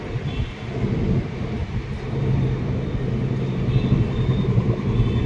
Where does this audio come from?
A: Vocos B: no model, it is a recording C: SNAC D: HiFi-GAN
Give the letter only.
B